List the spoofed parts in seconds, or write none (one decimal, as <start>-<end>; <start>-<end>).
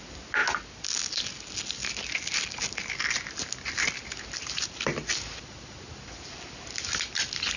none